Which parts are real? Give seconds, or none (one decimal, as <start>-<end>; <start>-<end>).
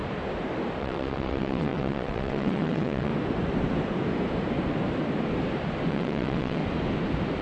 0.0-0.8; 3.1-5.9; 6.6-7.4